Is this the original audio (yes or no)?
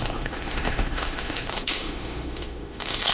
no